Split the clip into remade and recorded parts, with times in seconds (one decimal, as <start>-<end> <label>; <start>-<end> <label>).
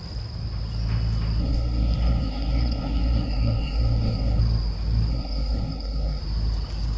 0.0-1.4 recorded; 1.4-4.4 remade; 4.4-5.1 recorded; 5.1-6.2 remade; 6.2-7.0 recorded